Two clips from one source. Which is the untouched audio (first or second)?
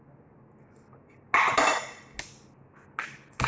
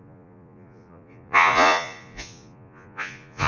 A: first